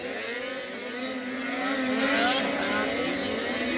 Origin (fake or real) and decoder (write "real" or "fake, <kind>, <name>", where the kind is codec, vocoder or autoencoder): real